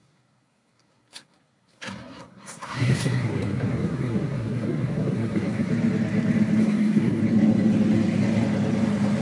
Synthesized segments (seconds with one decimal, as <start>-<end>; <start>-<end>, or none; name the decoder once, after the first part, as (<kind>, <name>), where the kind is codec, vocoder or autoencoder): 0.0-5.7 (codec, SNAC); 6.6-7.2